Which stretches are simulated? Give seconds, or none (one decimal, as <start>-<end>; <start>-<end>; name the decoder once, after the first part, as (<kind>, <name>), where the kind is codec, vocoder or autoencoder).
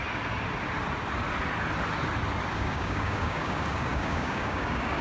2.5-5.0 (codec, DAC)